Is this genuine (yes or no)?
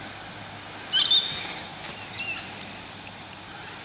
yes